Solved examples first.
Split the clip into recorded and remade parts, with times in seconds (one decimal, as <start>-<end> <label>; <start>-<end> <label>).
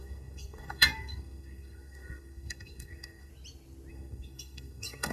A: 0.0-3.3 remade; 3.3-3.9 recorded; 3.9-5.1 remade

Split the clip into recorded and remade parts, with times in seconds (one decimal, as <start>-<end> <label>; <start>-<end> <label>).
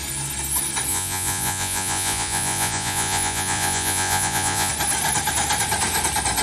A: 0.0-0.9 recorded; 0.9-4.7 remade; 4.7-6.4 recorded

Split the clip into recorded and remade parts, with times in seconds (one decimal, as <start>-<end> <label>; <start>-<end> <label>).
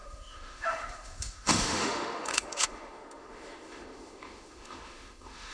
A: 0.0-5.5 remade